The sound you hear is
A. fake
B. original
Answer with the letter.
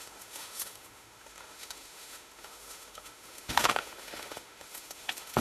A